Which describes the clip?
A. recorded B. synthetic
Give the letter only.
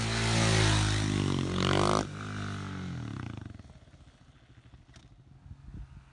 A